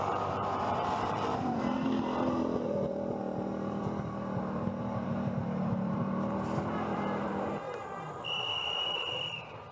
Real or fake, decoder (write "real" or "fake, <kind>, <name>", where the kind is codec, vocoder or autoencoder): fake, vocoder, BigVGAN v2